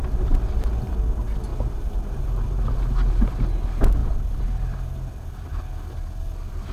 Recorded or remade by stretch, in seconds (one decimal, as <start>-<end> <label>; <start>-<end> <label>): 0.0-0.7 remade; 0.7-4.0 recorded; 4.0-5.6 remade; 5.6-6.7 recorded